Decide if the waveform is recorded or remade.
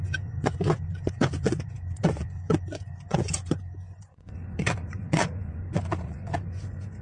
remade